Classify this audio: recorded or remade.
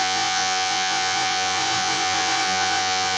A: remade